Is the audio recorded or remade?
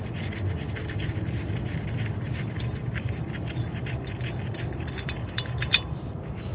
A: remade